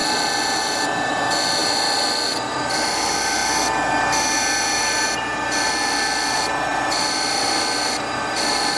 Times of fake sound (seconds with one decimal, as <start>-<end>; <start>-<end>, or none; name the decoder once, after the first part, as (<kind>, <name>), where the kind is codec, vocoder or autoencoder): none